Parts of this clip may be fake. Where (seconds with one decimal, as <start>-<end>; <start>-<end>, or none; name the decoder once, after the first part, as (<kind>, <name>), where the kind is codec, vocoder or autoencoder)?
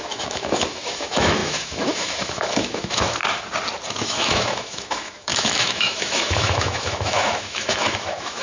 0.0-3.2 (autoencoder, DAC-VAE); 3.9-8.4